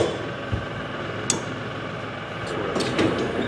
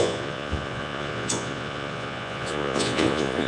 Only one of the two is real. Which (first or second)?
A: first